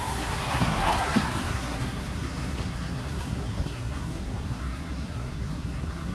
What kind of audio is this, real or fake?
fake